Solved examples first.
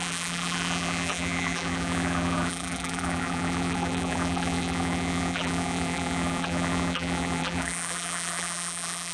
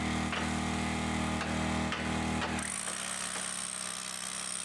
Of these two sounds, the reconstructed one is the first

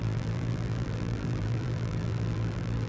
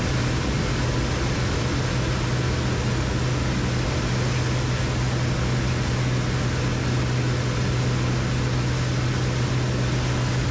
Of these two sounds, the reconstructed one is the first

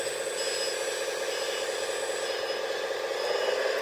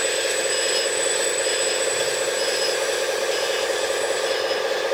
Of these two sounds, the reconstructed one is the second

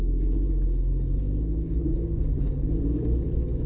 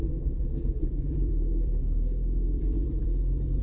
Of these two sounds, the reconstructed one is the second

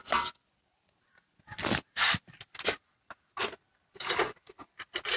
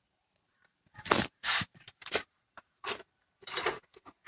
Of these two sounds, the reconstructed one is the second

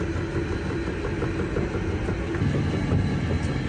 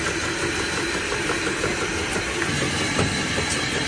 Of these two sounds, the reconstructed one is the second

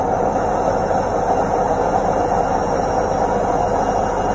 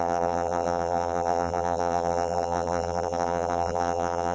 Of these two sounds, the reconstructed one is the second